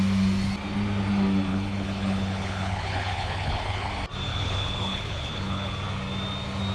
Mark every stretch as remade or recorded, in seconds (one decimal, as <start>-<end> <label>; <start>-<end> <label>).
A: 0.0-1.5 recorded; 1.5-3.9 remade; 3.9-4.3 recorded; 4.3-5.7 remade; 5.7-6.7 recorded